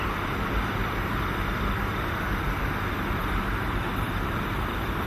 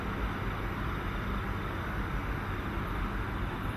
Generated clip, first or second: first